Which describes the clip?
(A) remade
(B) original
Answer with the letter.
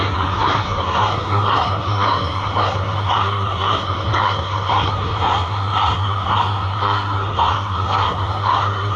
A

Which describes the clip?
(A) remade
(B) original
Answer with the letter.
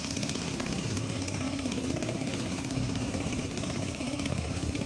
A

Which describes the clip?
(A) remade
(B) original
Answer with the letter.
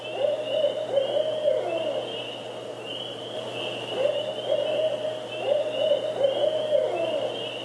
B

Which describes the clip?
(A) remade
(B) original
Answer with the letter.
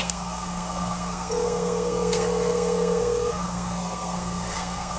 A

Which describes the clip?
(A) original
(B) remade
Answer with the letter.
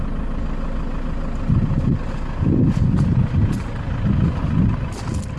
A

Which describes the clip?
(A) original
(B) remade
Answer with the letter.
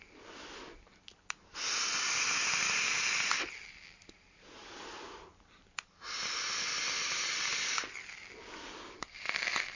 A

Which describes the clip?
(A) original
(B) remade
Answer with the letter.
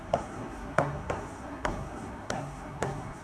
B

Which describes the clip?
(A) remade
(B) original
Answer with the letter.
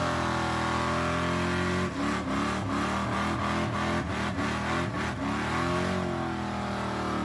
B